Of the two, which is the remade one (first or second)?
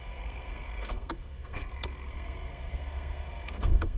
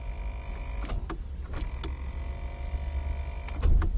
first